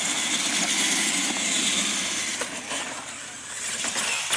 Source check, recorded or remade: recorded